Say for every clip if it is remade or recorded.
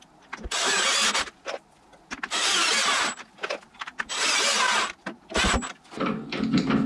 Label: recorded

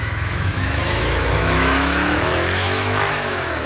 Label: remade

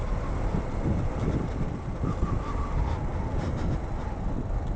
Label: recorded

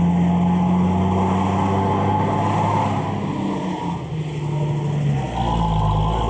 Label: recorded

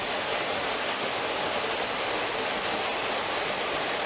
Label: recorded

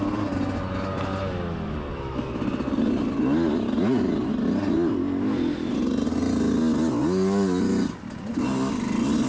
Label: recorded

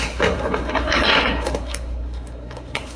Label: remade